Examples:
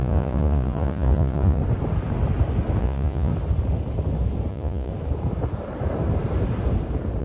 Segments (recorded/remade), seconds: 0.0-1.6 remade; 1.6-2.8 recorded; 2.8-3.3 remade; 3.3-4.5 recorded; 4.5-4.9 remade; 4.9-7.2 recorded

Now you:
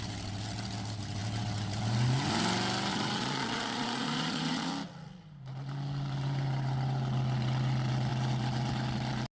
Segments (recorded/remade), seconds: 0.0-2.9 recorded; 2.9-4.7 remade; 4.7-9.4 recorded